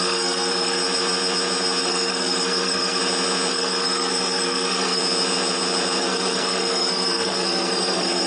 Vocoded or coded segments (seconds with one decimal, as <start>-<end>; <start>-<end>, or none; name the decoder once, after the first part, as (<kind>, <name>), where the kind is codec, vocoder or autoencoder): 0.0-0.8 (codec, SNAC); 1.8-3.0; 3.5-5.0; 6.0-8.3